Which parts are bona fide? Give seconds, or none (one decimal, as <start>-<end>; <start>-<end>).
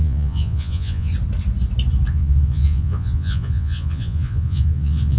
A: 1.1-2.1